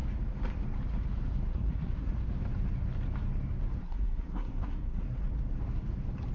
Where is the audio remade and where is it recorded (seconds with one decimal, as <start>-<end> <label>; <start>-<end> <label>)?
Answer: 0.0-1.5 recorded; 1.5-2.1 remade; 2.1-3.8 recorded; 3.8-5.2 remade; 5.2-6.3 recorded